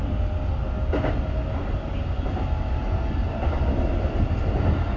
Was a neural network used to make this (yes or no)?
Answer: no